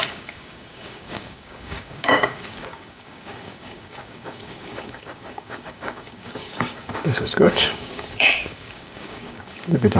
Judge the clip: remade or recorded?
remade